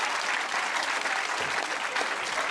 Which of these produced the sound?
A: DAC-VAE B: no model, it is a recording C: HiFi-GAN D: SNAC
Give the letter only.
B